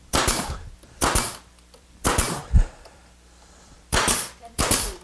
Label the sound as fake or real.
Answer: fake